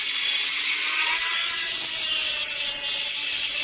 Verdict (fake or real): fake